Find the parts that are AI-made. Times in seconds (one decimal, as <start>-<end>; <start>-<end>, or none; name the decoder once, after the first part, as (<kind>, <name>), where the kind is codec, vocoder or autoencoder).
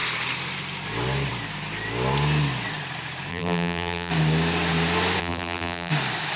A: 3.3-4.1 (vocoder, BigVGAN v2); 5.2-5.9